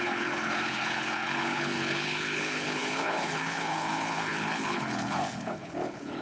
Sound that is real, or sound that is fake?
fake